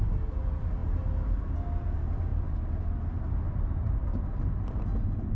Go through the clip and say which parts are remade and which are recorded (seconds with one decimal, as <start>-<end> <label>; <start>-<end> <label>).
0.0-5.3 recorded